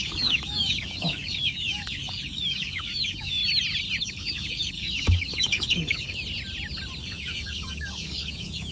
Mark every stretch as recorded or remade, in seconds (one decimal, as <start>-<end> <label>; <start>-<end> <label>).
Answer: 0.0-3.4 remade; 3.4-4.0 recorded; 4.0-6.2 remade; 6.2-7.0 recorded; 7.0-8.7 remade